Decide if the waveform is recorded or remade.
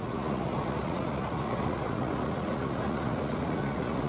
remade